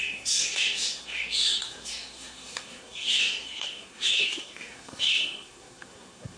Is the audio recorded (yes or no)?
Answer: no